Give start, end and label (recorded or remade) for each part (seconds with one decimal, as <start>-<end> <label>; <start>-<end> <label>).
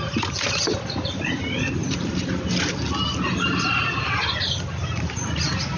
0.0-5.8 recorded